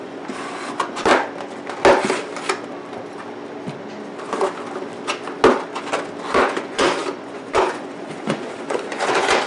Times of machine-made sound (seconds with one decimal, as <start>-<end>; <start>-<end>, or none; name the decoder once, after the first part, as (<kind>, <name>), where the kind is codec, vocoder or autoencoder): 0.0-1.1 (vocoder, Vocos); 6.3-9.5